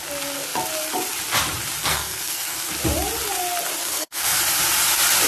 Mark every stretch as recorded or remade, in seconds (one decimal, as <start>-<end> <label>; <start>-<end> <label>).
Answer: 0.0-1.8 recorded; 1.8-2.7 remade; 2.7-3.8 recorded; 3.8-4.4 remade; 4.4-5.3 recorded